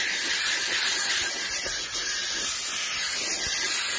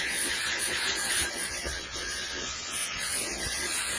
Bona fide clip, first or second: first